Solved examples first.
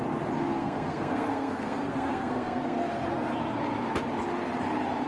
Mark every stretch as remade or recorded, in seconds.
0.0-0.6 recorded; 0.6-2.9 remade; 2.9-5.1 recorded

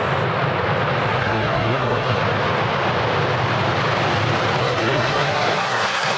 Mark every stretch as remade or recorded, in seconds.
0.0-1.1 recorded; 1.1-2.2 remade; 2.2-4.6 recorded; 4.6-6.2 remade